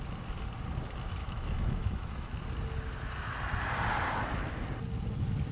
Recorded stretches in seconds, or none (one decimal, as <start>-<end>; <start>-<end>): 0.0-1.2; 2.3-5.5